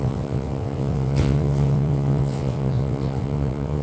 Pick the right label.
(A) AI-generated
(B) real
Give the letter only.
A